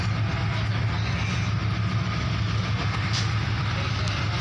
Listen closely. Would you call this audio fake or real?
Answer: real